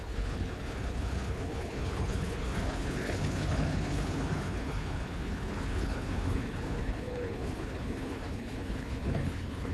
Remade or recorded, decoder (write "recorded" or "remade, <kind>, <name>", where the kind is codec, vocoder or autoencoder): remade, codec, HILCodec